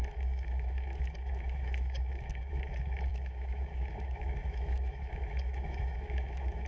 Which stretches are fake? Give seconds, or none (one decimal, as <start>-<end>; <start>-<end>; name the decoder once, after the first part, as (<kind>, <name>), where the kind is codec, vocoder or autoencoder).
0.0-6.7 (autoencoder, DAC-VAE)